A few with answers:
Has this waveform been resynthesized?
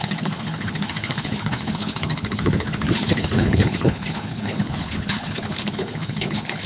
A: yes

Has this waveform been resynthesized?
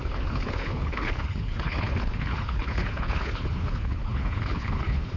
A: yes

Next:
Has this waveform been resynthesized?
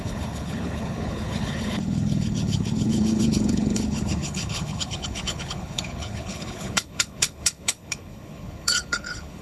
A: yes